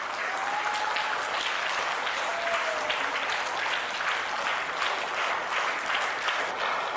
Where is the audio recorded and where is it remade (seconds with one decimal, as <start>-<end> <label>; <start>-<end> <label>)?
0.0-7.0 recorded